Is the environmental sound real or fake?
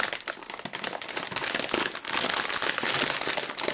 real